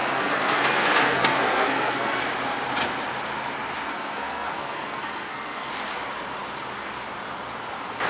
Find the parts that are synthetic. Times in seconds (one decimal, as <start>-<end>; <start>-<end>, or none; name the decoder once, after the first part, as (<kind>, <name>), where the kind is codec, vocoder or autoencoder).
0.0-2.2 (codec, SNAC); 3.9-5.7